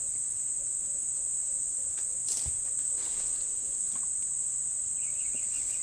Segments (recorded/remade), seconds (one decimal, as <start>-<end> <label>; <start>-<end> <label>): 0.0-5.8 recorded